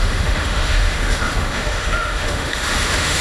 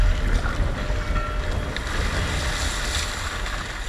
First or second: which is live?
second